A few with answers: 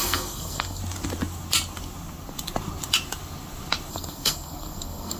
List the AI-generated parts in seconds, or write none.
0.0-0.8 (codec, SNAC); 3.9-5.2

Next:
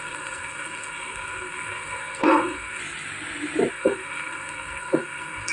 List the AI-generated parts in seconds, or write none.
0.0-2.8 (codec, SNAC); 3.7-5.5

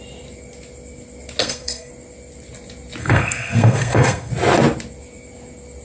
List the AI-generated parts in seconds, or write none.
1.4-1.9 (codec, SNAC); 3.0-4.3

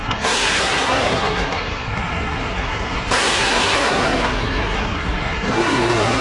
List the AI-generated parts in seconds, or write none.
0.0-6.2 (codec, SNAC)

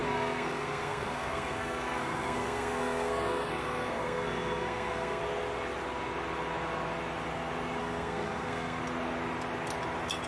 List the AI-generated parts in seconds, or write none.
0.0-5.2 (codec, SNAC); 7.8-8.8